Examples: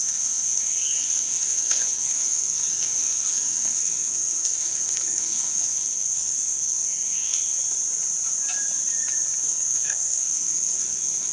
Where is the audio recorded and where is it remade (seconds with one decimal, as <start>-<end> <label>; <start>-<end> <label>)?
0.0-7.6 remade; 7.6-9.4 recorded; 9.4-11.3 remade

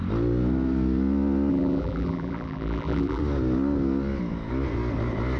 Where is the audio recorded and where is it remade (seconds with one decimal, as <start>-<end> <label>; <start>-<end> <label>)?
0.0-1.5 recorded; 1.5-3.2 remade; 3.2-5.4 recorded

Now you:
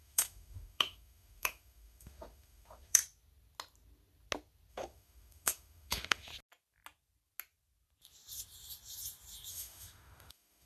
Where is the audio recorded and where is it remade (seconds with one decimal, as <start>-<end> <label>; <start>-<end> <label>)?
0.0-3.0 remade; 3.0-4.7 recorded; 4.7-6.3 remade; 6.3-9.5 recorded; 9.5-10.7 remade